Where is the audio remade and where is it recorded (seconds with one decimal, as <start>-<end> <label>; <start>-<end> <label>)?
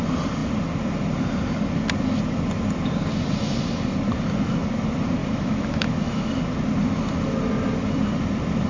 0.0-5.2 recorded; 5.2-6.3 remade; 6.3-8.7 recorded